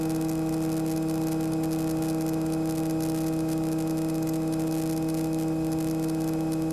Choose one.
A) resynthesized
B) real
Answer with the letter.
B